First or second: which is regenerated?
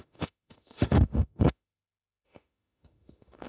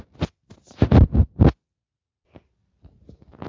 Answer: first